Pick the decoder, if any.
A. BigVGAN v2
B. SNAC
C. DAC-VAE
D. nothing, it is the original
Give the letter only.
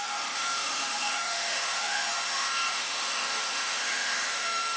C